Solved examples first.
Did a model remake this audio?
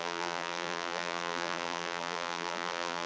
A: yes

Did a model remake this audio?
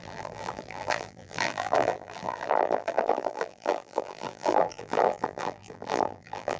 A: yes